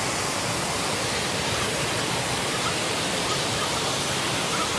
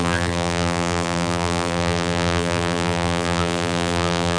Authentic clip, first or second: first